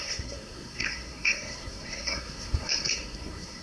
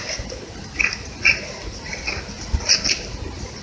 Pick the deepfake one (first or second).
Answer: first